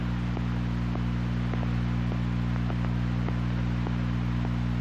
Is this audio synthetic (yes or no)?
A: no